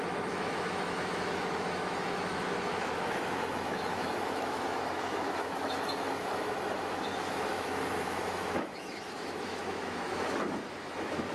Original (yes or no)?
no